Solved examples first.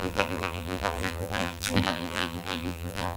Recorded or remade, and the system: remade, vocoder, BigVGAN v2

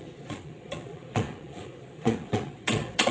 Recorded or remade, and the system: remade, vocoder, Vocos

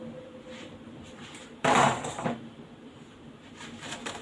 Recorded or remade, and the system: recorded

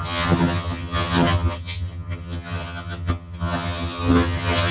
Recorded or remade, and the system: remade, vocoder, HiFi-GAN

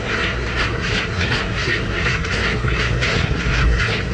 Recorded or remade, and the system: remade, codec, SNAC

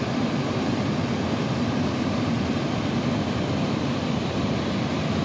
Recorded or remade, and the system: remade, vocoder, BigVGAN v2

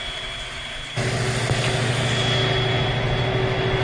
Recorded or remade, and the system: recorded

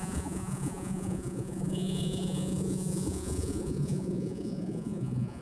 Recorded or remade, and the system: remade, vocoder, Vocos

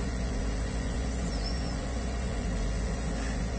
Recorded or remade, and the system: remade, vocoder, Vocos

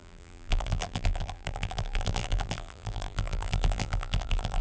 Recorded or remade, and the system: remade, vocoder, BigVGAN v2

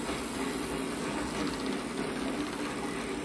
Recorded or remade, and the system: recorded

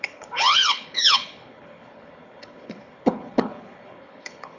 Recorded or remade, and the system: remade, codec, HILCodec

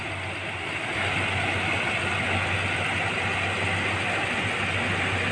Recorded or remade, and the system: recorded